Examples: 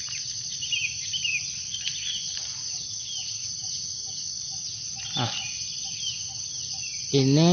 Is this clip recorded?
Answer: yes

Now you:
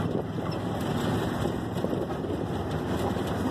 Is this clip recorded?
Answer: yes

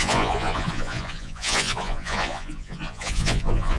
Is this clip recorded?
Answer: no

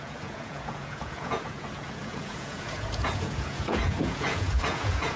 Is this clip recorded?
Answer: no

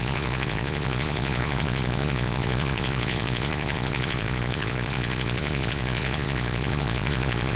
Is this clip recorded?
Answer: no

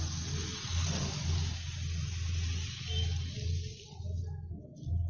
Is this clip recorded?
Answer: yes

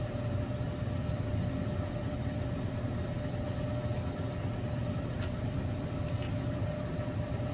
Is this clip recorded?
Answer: yes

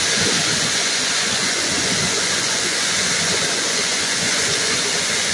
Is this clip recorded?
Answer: no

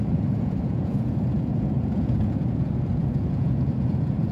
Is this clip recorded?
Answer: no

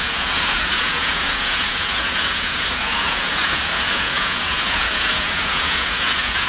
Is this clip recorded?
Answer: no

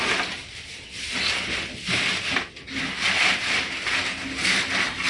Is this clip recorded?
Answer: yes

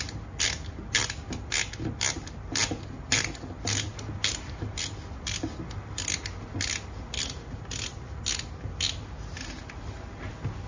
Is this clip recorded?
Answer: yes